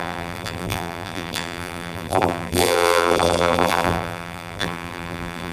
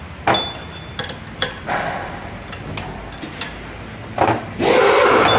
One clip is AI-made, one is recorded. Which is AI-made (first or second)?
first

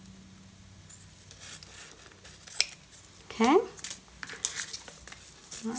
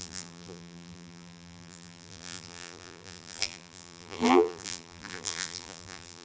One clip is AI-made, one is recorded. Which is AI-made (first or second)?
second